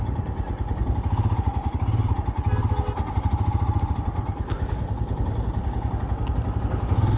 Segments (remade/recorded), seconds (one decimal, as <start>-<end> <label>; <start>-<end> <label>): 0.0-7.2 recorded